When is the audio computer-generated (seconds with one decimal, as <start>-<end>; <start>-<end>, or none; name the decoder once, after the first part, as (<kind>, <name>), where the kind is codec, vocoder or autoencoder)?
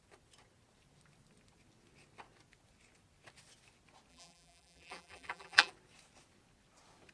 4.1-5.7 (vocoder, BigVGAN v2)